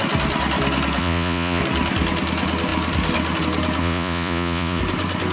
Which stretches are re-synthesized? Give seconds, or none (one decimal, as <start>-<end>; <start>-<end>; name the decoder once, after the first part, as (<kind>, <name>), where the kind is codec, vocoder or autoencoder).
1.0-1.6 (vocoder, Vocos); 3.8-4.8

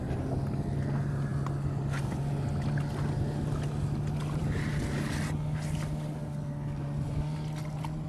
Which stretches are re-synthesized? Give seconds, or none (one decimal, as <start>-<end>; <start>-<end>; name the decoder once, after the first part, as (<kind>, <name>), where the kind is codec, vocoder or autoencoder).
none

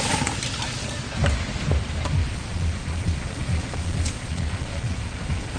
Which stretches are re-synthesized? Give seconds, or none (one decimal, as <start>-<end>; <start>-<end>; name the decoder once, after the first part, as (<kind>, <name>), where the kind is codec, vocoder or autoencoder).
2.2-5.6 (vocoder, Vocos)

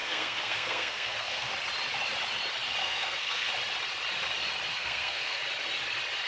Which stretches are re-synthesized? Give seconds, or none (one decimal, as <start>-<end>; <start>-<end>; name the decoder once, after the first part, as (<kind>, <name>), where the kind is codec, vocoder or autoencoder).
0.0-1.5 (codec, SNAC); 2.8-3.5; 4.7-5.4

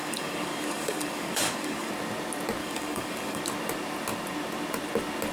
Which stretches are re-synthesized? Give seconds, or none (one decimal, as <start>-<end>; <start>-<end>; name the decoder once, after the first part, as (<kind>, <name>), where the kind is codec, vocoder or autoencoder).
0.0-1.9 (codec, DAC); 2.6-3.4

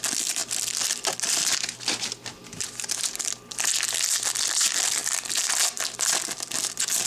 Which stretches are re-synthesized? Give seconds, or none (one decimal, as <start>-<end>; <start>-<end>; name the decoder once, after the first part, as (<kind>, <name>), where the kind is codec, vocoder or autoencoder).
none

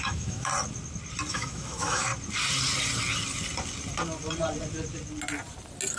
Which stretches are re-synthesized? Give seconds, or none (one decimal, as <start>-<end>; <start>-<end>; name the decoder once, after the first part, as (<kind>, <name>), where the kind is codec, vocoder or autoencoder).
0.0-0.5 (autoencoder, DAC-VAE); 1.3-2.1